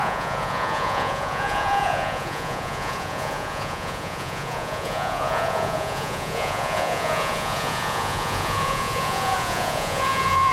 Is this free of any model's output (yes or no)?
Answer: no